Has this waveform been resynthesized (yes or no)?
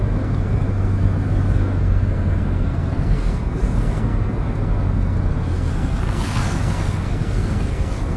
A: yes